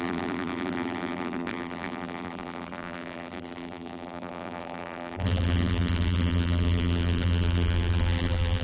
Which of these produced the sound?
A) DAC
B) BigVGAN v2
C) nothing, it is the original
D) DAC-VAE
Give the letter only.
B